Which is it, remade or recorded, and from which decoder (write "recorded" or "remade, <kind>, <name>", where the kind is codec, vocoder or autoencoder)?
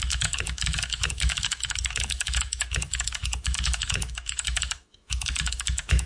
remade, autoencoder, DAC-VAE